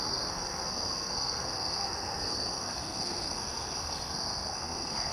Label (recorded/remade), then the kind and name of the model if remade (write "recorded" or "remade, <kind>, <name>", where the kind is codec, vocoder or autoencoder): remade, codec, SNAC